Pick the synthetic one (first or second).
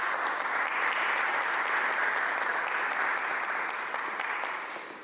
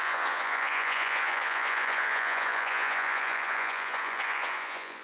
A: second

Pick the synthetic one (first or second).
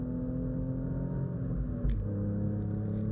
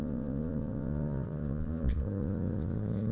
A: second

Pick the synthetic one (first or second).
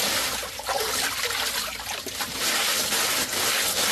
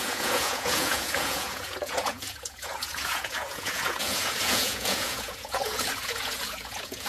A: second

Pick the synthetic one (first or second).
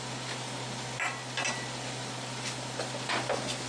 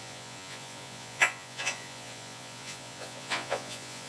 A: second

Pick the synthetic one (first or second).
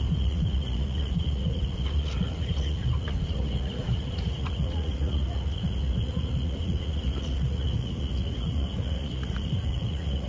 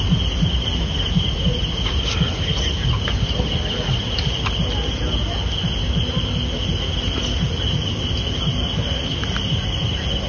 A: first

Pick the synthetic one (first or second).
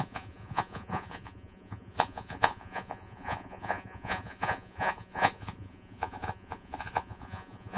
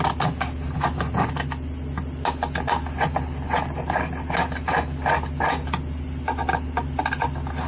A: first